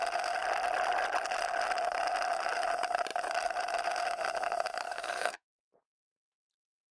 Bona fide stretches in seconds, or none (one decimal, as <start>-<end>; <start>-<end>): 0.0-4.8; 5.6-6.9